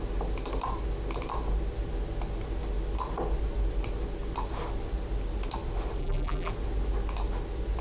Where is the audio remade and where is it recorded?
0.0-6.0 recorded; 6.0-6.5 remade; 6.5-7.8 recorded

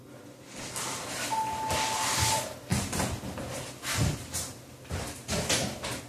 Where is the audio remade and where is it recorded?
0.0-6.1 recorded

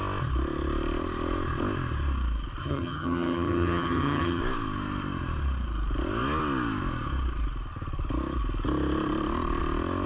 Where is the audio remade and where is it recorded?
0.0-2.6 recorded; 2.6-4.4 remade; 4.4-10.1 recorded